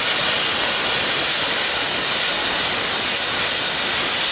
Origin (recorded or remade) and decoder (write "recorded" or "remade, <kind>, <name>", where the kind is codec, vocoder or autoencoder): recorded